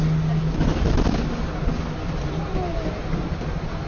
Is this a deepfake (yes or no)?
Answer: no